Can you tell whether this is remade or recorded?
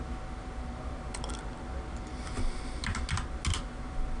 recorded